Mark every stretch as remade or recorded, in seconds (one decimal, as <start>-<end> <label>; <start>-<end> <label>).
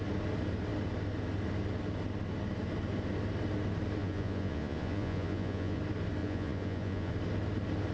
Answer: 0.0-4.0 recorded; 4.0-5.8 remade; 5.8-6.2 recorded; 6.2-7.1 remade; 7.1-7.9 recorded